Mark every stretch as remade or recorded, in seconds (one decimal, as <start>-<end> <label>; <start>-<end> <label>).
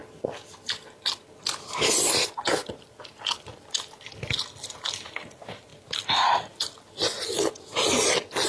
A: 0.0-8.5 recorded